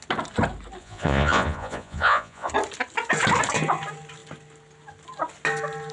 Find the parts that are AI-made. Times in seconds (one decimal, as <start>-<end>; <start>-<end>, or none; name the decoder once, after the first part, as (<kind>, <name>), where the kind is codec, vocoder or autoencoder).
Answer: 0.8-2.5 (vocoder, Vocos)